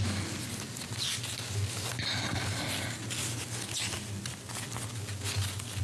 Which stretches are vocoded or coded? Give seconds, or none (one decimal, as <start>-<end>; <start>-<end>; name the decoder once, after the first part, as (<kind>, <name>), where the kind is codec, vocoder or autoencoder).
none